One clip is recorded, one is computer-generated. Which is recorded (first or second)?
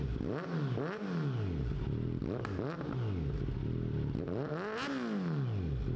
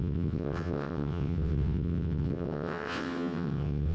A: first